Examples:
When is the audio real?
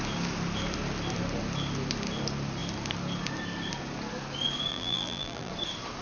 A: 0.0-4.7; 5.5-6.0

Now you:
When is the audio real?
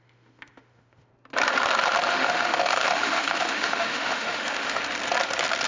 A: 1.1-2.1; 4.8-5.7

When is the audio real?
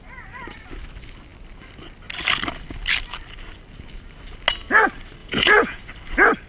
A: 0.0-5.2; 5.8-6.5